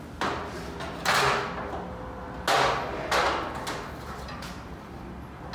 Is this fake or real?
real